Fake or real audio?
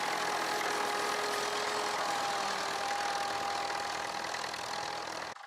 real